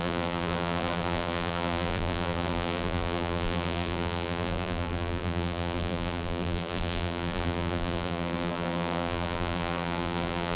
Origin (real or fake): fake